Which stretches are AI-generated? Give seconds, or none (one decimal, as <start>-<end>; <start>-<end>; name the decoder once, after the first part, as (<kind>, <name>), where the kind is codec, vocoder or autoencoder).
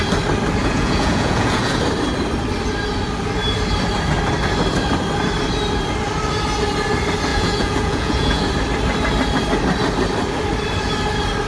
0.6-1.8 (vocoder, Vocos); 7.3-8.4